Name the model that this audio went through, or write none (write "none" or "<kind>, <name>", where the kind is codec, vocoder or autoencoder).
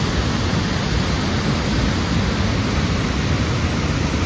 none